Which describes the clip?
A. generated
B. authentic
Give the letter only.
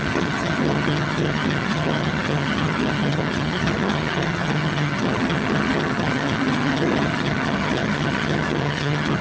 A